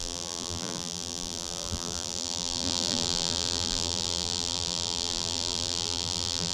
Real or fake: fake